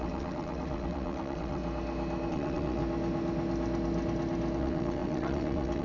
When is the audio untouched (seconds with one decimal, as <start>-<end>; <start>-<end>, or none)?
1.6-2.3; 2.8-4.6